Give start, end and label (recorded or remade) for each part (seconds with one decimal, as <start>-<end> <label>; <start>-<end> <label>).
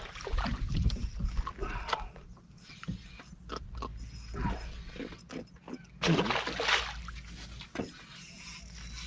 0.0-9.1 recorded